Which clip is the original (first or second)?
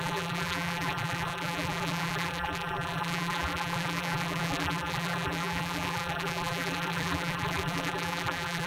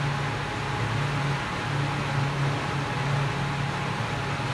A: second